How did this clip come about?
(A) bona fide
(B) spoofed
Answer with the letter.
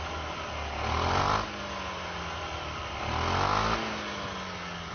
A